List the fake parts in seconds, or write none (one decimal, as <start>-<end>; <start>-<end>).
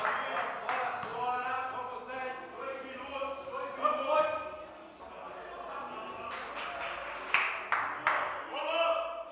none